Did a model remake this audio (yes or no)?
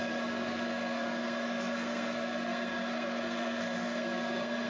yes